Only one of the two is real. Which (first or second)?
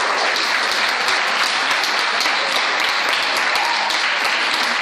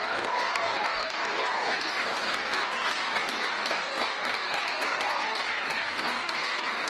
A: first